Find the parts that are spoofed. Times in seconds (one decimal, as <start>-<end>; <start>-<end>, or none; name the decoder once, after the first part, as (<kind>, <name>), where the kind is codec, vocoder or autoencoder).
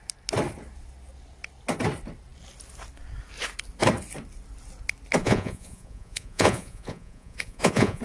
5.2-8.0 (vocoder, Vocos)